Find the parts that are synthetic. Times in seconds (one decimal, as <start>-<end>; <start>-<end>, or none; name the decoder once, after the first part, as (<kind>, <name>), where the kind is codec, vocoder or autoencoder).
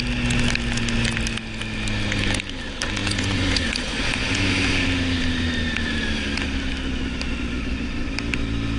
3.0-4.0 (vocoder, Vocos)